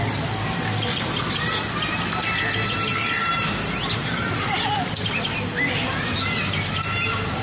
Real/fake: real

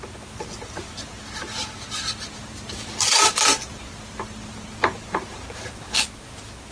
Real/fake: real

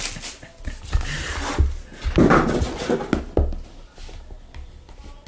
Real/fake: real